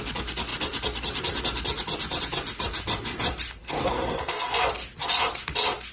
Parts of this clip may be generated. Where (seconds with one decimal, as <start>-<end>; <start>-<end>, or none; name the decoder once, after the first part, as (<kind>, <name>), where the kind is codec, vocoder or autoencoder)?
3.6-4.6 (codec, SNAC)